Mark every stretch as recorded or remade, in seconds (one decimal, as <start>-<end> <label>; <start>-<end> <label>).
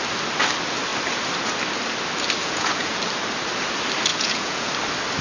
0.0-2.4 recorded; 2.4-3.0 remade; 3.0-4.1 recorded; 4.1-4.7 remade; 4.7-5.2 recorded